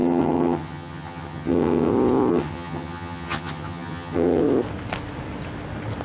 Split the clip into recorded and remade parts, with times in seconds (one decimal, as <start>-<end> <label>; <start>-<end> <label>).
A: 0.0-1.9 remade; 1.9-2.3 recorded; 2.3-4.4 remade; 4.4-6.0 recorded